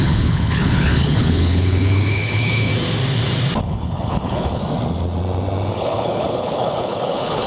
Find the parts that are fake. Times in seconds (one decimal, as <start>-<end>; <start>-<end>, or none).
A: 0.0-2.7; 3.6-4.6; 5.7-7.5